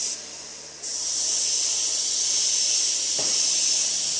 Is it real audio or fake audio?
real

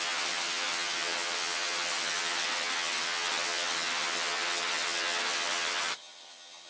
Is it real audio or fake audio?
fake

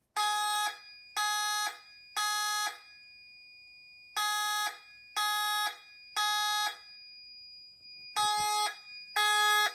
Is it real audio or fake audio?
real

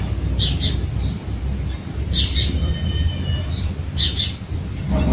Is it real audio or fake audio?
real